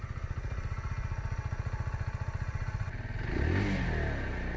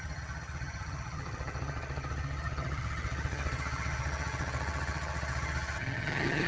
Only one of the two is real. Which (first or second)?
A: first